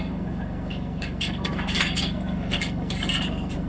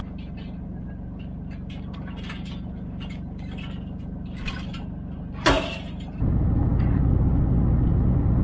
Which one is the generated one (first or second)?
first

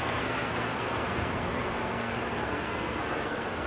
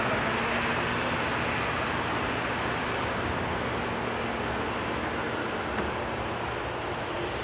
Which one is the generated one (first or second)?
first